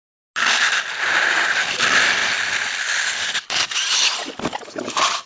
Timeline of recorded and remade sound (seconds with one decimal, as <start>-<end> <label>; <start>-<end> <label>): 0.0-5.3 recorded

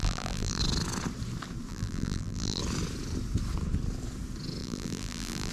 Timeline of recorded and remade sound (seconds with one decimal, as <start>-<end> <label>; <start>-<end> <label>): 0.0-0.6 remade; 0.6-1.7 recorded; 1.7-2.6 remade; 2.6-4.6 recorded; 4.6-5.5 remade

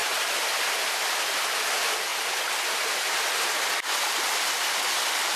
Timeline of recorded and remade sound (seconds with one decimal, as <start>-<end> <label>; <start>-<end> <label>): 0.0-1.3 remade; 1.3-5.4 recorded

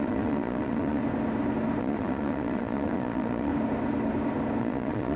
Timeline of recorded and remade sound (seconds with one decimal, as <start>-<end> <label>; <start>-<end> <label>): 0.0-1.0 remade; 1.0-1.8 recorded; 1.8-3.5 remade; 3.5-4.6 recorded; 4.6-5.2 remade

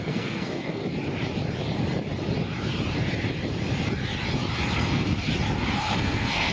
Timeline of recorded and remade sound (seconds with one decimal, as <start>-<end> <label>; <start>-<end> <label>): 0.0-0.8 remade; 0.8-4.7 recorded; 4.7-5.2 remade; 5.2-5.9 recorded; 5.9-6.5 remade